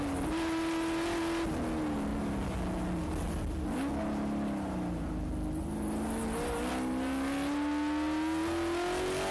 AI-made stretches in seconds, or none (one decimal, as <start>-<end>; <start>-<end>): none